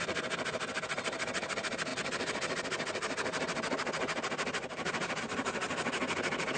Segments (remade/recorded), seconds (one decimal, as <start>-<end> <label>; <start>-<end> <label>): 0.0-6.6 recorded